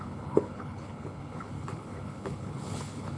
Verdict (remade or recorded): remade